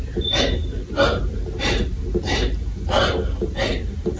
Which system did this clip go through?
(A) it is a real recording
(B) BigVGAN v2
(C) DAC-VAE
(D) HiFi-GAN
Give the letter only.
A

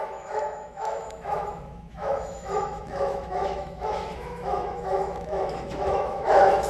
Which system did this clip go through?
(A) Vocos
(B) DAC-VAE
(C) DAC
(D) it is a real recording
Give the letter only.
B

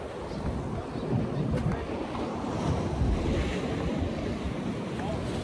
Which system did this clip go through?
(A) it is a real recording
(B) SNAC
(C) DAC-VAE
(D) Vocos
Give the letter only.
A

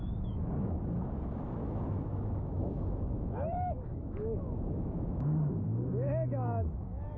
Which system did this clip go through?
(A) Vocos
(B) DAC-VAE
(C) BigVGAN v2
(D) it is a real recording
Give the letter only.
B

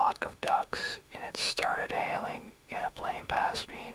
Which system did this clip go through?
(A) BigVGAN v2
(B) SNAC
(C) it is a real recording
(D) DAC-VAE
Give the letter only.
D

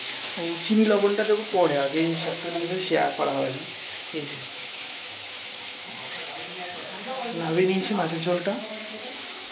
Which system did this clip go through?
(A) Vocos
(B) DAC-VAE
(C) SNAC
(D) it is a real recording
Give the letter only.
B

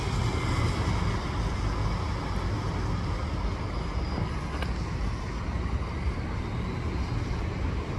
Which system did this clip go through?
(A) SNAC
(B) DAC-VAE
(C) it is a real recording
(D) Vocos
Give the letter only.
C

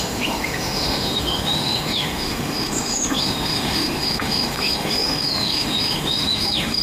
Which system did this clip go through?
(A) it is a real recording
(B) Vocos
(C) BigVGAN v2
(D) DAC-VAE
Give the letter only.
D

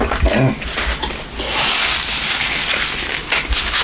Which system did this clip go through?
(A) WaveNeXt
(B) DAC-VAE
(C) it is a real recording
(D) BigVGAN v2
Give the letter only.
C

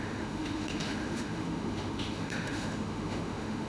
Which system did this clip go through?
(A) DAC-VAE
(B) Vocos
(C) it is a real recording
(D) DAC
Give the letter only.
A